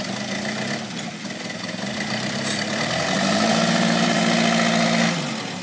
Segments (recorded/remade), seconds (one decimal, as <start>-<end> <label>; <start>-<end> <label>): 0.0-1.2 recorded; 1.2-4.2 remade; 4.2-5.6 recorded